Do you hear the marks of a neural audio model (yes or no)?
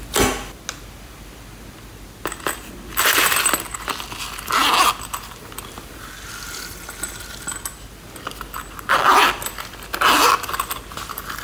no